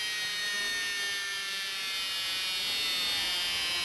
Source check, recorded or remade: recorded